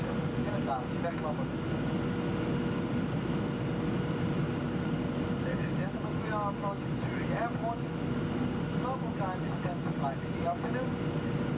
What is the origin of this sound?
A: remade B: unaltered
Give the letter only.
B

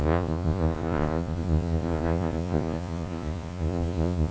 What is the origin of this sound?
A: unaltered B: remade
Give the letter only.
B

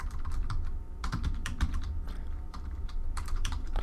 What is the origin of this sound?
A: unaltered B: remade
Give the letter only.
B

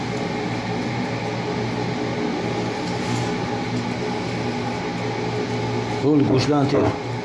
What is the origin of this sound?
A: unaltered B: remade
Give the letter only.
A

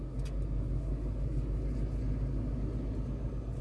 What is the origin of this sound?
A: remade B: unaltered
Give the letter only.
B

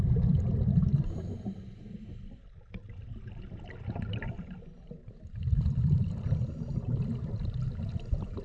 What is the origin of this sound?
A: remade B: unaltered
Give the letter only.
B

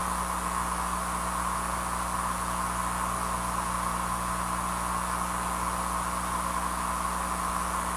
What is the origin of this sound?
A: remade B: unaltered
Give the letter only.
B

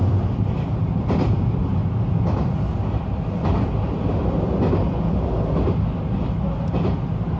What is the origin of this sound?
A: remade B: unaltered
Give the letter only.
B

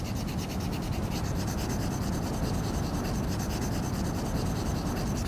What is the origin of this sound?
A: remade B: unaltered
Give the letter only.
B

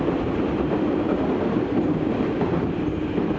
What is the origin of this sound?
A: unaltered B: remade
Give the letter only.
B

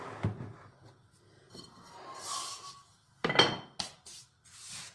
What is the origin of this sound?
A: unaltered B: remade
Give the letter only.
A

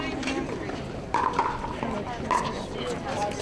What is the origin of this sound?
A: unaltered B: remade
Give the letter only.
A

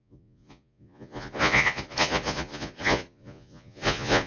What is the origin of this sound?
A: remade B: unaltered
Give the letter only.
A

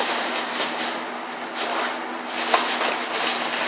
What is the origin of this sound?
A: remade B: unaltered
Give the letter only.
B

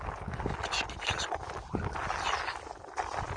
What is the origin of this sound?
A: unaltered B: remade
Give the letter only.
A